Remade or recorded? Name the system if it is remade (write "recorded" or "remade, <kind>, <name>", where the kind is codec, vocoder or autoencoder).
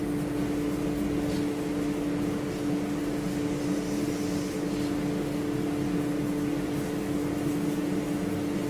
recorded